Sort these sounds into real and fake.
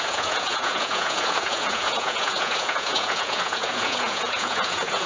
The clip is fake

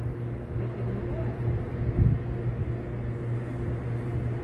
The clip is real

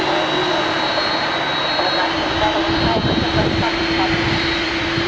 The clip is fake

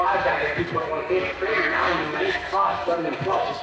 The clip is fake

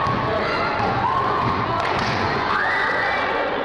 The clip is fake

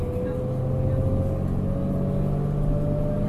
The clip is real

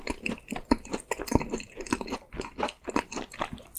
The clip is real